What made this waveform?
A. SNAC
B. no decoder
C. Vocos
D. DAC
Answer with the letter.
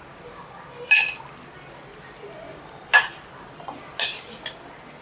B